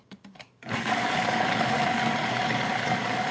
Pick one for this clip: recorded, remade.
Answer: remade